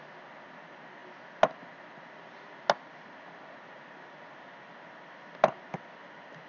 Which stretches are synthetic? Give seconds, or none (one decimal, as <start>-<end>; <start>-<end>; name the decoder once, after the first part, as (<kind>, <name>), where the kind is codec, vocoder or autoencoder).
none